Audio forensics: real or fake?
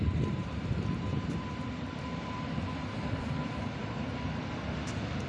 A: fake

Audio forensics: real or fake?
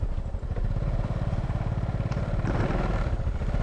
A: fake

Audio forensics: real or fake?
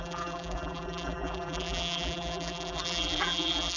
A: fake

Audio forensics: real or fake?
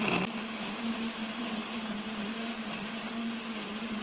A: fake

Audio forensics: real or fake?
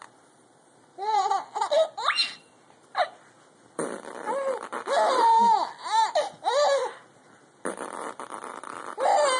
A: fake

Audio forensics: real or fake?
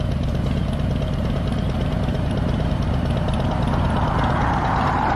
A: fake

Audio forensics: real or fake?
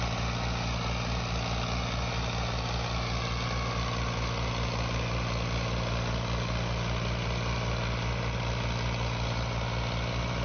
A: real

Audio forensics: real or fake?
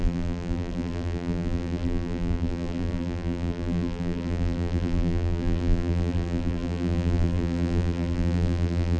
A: fake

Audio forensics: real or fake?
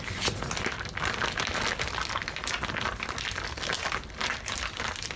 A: real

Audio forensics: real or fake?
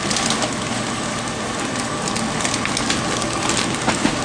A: real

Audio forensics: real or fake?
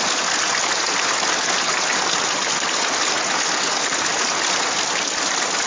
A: real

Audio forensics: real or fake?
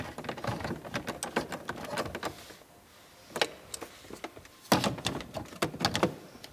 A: real